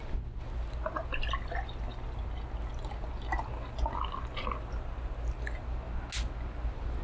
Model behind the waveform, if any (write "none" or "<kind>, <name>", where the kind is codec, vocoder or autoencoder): none